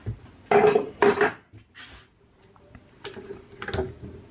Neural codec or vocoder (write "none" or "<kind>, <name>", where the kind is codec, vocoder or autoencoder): none